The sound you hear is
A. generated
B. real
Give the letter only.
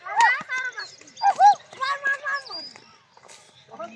B